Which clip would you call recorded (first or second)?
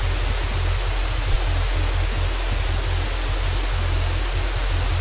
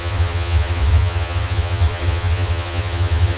first